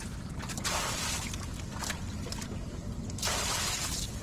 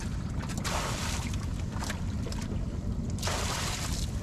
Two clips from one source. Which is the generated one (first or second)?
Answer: second